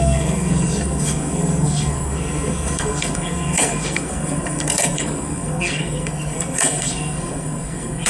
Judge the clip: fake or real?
fake